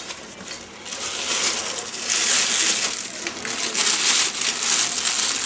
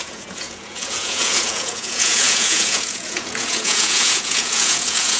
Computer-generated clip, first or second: second